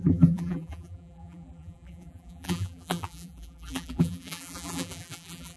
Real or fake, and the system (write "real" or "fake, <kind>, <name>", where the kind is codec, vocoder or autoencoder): fake, vocoder, BigVGAN v2